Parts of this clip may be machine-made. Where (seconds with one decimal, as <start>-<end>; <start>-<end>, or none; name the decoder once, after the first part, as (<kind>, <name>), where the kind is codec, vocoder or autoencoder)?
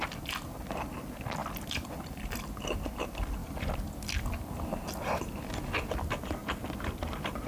3.4-5.2 (vocoder, BigVGAN v2)